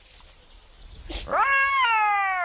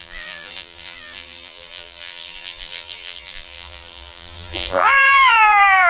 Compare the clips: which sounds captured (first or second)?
first